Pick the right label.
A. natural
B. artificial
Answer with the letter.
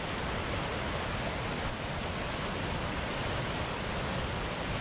A